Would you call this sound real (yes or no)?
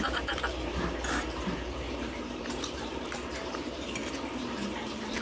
no